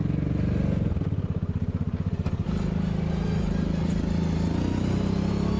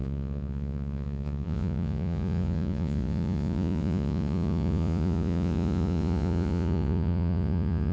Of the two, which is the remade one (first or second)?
second